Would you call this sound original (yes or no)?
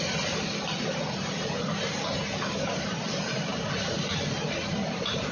no